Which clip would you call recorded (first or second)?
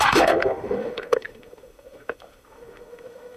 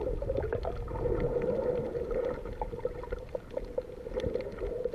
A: second